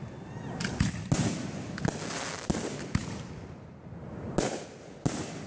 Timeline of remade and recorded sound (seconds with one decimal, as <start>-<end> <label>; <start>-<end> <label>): 0.0-5.5 recorded